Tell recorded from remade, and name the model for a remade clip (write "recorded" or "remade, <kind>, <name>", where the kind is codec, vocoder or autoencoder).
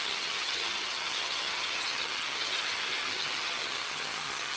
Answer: remade, vocoder, HiFi-GAN